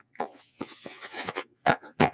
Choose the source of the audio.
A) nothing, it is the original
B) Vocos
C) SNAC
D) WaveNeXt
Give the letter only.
B